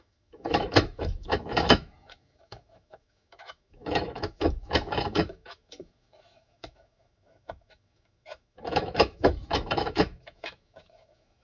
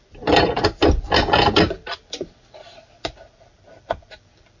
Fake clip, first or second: first